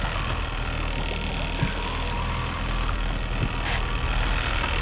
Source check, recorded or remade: recorded